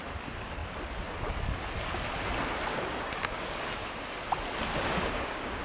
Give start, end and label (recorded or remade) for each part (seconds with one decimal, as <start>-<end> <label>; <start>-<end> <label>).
0.0-2.7 recorded; 2.7-3.9 remade; 3.9-4.7 recorded; 4.7-5.6 remade